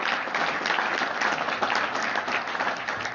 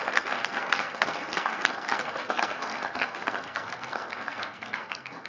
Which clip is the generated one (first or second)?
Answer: second